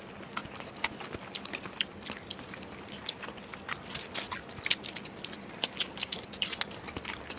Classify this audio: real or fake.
real